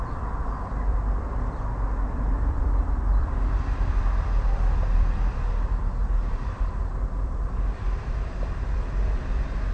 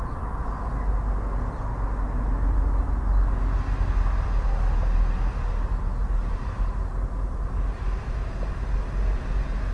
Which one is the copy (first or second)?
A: first